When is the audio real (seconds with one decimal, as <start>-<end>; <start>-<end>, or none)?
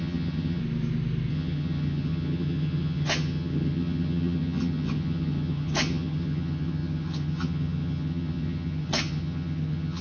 0.6-1.3